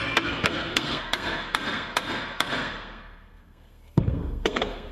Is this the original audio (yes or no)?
no